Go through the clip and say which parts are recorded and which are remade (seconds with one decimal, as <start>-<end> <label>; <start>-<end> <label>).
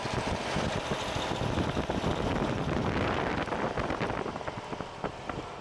0.0-5.6 remade